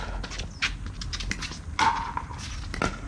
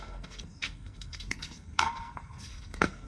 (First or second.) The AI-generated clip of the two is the second